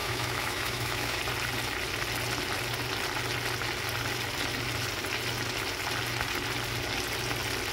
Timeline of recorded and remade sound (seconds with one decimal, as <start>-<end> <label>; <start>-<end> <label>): 0.0-1.2 remade; 1.2-7.7 recorded